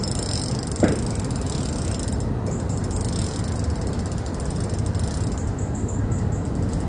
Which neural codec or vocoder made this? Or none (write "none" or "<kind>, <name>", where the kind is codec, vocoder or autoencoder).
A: none